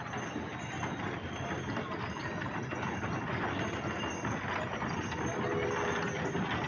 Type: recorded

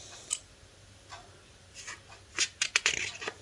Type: recorded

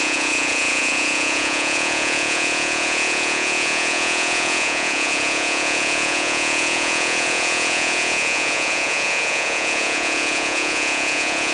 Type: remade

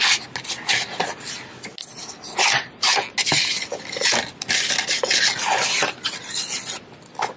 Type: recorded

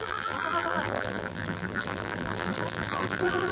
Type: remade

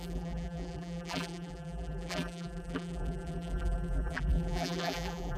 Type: remade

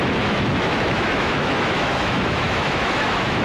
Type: remade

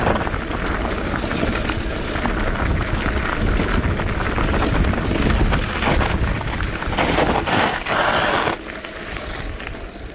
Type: recorded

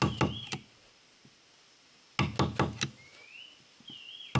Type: recorded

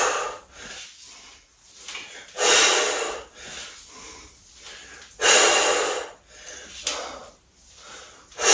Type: recorded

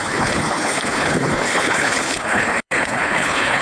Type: remade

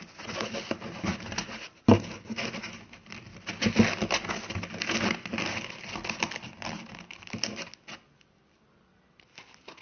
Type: recorded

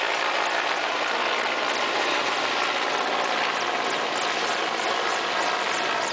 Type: recorded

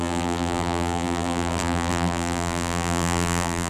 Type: remade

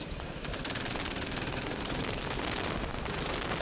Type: recorded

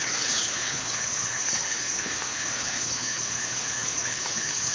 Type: remade